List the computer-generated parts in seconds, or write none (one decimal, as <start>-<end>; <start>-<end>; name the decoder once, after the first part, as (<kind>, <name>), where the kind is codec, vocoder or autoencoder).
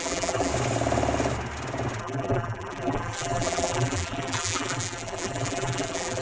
0.0-0.5 (vocoder, BigVGAN v2); 2.0-6.2